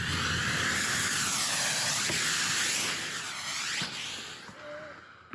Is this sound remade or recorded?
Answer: recorded